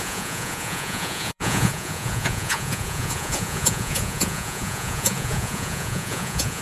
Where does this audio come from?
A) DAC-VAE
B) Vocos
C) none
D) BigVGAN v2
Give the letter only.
B